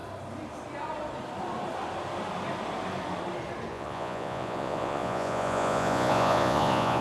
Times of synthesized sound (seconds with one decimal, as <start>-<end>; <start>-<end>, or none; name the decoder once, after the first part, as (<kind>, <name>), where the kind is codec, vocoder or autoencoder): 3.7-7.0 (vocoder, Vocos)